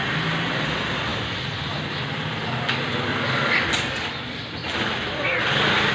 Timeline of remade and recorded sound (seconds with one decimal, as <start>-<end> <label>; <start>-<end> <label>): 0.0-3.1 recorded; 3.1-3.7 remade; 3.7-5.9 recorded